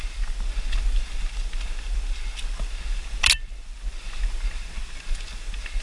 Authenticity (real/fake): real